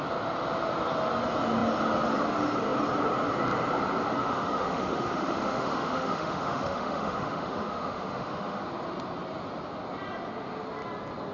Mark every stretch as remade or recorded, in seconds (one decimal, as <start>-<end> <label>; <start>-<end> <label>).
0.0-4.2 recorded; 4.2-8.6 remade; 8.6-11.3 recorded